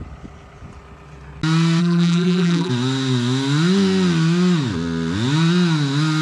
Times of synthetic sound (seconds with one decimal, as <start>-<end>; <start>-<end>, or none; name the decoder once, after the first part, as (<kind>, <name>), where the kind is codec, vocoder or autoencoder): 1.8-2.7 (vocoder, BigVGAN v2)